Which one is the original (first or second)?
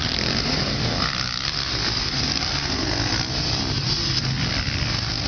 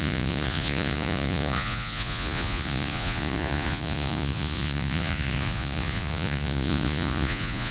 first